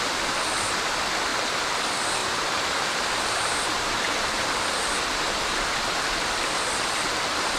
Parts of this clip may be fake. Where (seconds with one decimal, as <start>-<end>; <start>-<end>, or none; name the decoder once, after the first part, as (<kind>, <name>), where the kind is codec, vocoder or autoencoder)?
2.2-4.6 (vocoder, BigVGAN v2)